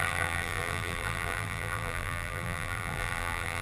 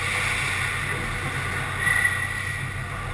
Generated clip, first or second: first